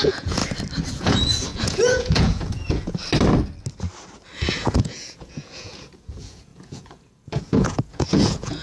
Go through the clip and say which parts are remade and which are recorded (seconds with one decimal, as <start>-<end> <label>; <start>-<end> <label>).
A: 0.0-0.4 remade; 0.4-0.9 recorded; 0.9-3.0 remade; 3.0-4.5 recorded; 4.5-8.6 remade